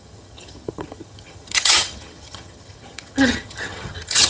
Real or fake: fake